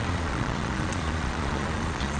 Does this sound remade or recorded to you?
remade